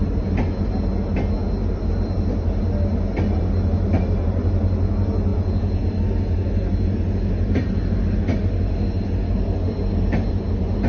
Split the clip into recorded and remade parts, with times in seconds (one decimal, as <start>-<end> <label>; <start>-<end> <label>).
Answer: 0.0-5.3 recorded; 5.3-5.8 remade; 5.8-10.9 recorded